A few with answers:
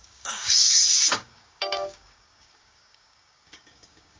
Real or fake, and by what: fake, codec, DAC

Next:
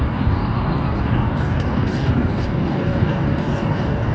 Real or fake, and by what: fake, codec, DAC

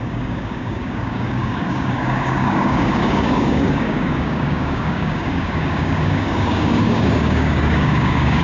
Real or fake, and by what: fake, codec, DAC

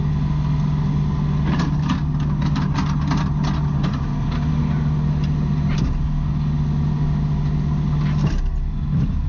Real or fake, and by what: real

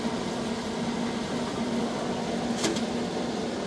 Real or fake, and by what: real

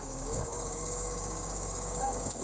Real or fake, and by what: fake, codec, DAC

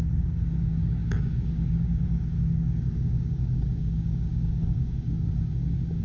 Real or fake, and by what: fake, codec, DAC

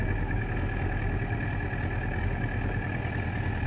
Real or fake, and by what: real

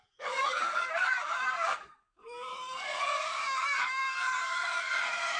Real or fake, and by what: fake, codec, DAC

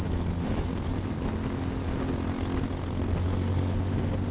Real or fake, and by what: real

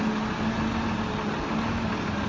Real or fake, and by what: real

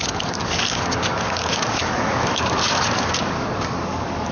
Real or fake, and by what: fake, codec, DAC